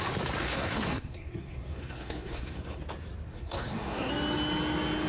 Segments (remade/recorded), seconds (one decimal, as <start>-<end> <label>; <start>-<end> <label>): 0.0-0.4 recorded; 0.4-2.8 remade; 2.8-3.3 recorded; 3.3-4.1 remade; 4.1-5.1 recorded